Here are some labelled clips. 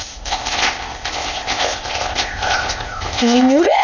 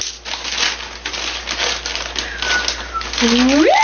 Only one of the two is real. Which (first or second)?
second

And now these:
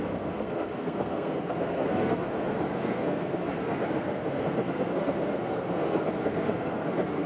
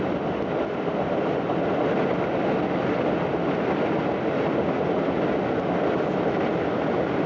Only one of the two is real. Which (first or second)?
second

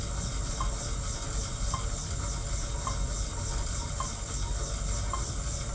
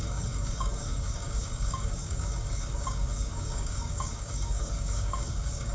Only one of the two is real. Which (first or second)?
first